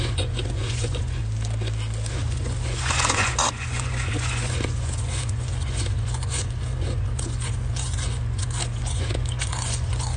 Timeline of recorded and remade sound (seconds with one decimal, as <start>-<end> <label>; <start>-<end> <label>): 0.0-1.2 remade; 1.2-2.1 recorded; 2.1-10.2 remade